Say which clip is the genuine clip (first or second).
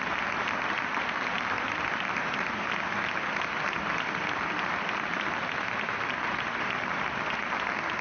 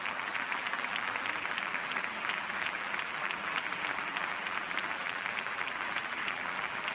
first